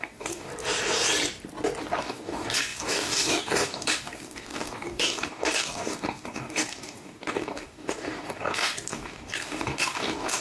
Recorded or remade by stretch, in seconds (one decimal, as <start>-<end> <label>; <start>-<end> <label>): 0.0-0.5 remade; 0.5-2.0 recorded; 2.0-10.4 remade